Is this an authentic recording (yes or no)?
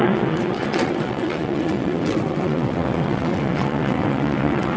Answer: no